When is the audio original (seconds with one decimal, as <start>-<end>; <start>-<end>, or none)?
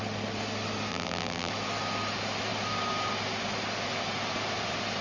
0.0-0.9; 1.5-5.0